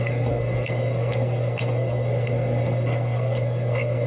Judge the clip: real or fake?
fake